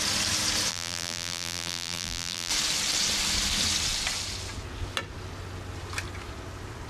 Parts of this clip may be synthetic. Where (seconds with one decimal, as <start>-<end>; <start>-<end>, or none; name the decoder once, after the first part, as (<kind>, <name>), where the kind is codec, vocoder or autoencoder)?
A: 0.7-2.5 (vocoder, BigVGAN v2)